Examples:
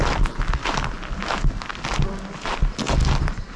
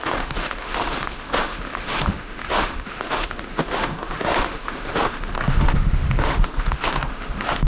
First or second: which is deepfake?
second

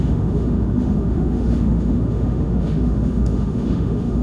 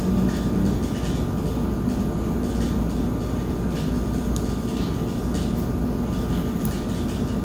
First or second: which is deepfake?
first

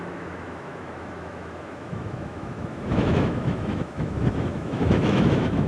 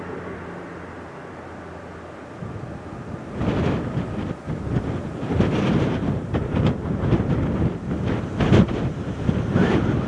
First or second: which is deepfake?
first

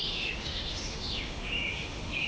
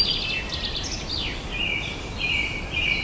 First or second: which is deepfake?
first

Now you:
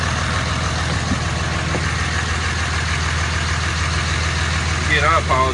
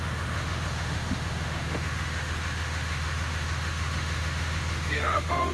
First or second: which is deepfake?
second